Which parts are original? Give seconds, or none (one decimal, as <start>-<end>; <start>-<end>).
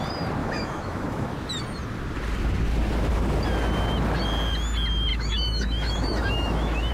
0.0-0.4; 1.3-5.1